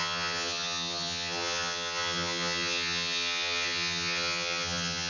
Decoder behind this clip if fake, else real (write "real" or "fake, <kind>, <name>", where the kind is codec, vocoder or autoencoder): fake, vocoder, HiFi-GAN